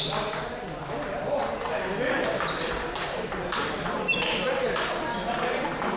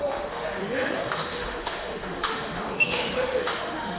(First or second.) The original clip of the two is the first